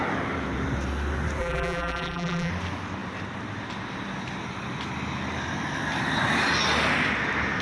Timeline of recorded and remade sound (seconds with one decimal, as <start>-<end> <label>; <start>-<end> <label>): 0.0-1.4 recorded; 1.4-2.5 remade; 2.5-7.6 recorded